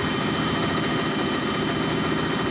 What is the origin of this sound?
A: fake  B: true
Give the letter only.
B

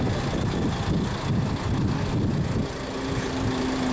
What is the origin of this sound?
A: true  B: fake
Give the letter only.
A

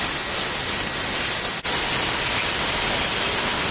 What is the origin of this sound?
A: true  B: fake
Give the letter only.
A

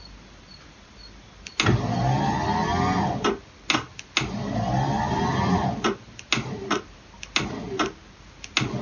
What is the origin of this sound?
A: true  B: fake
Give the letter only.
A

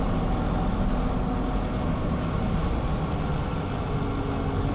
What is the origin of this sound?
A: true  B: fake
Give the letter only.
A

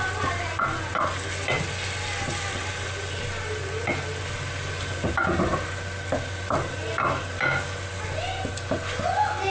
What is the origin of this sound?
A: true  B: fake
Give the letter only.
A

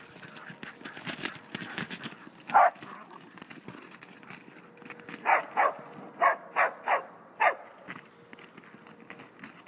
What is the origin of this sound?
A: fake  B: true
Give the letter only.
B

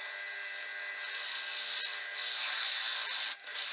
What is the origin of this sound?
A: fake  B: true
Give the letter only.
B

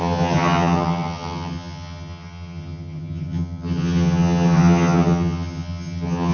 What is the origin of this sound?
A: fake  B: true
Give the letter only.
A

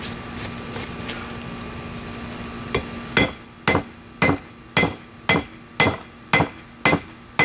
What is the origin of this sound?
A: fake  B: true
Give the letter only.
B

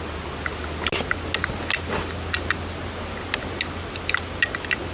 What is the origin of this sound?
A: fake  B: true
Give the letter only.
B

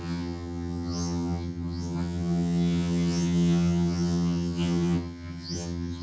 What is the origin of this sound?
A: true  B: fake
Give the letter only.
B